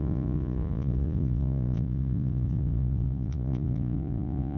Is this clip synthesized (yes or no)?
yes